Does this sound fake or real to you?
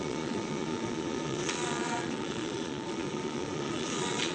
fake